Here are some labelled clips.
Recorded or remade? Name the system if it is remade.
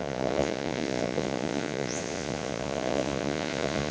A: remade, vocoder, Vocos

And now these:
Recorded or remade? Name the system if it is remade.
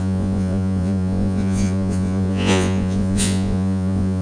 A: remade, vocoder, Vocos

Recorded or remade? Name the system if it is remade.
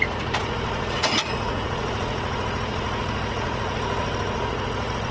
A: remade, vocoder, Vocos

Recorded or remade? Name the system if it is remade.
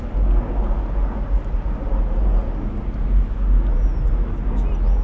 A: recorded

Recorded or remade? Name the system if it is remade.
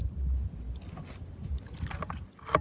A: recorded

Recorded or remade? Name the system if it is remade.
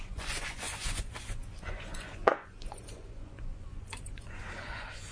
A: remade, vocoder, Vocos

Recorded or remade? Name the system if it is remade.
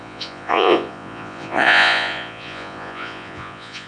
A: remade, vocoder, Vocos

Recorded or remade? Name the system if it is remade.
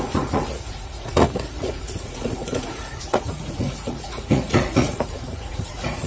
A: remade, vocoder, Vocos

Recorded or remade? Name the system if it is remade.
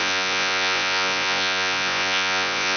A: remade, vocoder, Vocos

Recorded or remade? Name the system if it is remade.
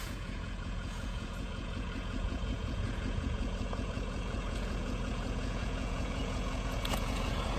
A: remade, vocoder, Vocos